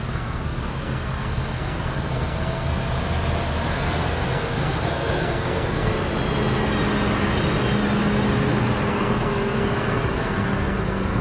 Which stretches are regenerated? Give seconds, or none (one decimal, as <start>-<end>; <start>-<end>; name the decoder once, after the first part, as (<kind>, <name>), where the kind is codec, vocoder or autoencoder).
0.0-2.8 (codec, SNAC); 3.7-5.9; 8.9-11.2